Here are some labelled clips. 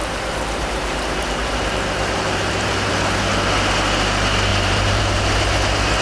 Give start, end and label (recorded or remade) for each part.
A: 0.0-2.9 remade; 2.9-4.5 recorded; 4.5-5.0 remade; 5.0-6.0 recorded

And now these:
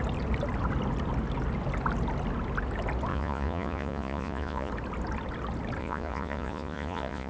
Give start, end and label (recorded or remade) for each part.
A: 0.0-3.1 recorded; 3.1-4.7 remade; 4.7-5.8 recorded; 5.8-7.3 remade

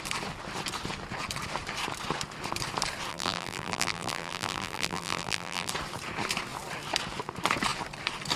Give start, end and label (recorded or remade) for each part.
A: 0.0-3.1 recorded; 3.1-5.7 remade; 5.7-8.4 recorded